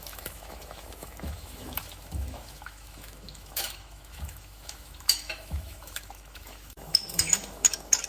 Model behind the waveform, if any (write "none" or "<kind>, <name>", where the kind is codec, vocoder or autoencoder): autoencoder, DAC-VAE